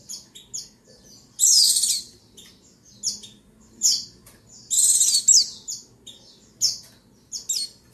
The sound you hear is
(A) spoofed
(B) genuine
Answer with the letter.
B